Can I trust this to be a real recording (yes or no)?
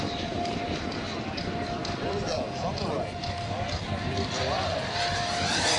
yes